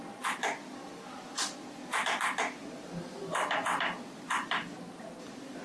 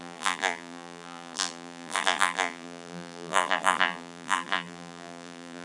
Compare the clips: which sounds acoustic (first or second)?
first